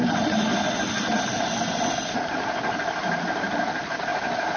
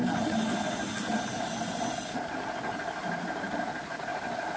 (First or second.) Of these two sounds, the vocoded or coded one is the first